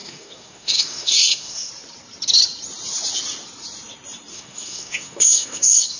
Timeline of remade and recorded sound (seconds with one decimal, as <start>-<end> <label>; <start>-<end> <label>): 0.0-1.7 remade; 1.7-4.3 recorded; 4.3-6.0 remade